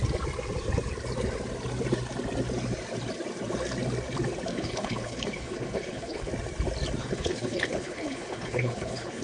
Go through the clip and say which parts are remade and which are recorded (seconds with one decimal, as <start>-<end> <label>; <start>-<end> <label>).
0.0-4.5 recorded; 4.5-6.3 remade; 6.3-7.0 recorded; 7.0-9.2 remade